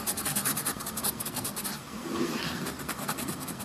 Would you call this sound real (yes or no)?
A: no